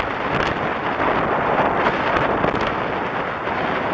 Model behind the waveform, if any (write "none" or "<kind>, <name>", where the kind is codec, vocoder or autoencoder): none